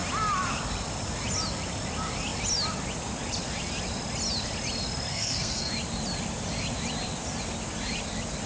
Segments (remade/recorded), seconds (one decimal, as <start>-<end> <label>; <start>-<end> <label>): 0.0-5.1 recorded; 5.1-5.7 remade; 5.7-8.5 recorded